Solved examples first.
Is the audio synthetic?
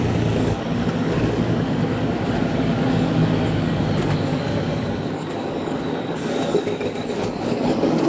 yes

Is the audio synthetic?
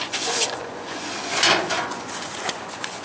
yes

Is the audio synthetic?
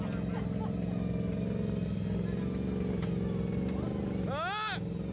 no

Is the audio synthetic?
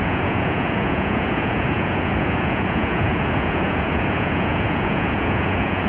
yes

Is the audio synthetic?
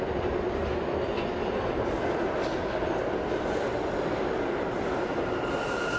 no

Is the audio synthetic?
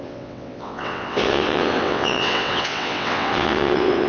yes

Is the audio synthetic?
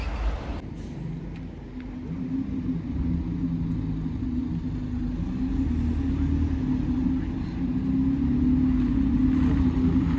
no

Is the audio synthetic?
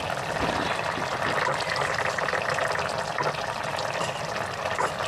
no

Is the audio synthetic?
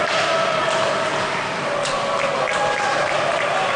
no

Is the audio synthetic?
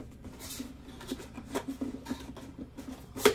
no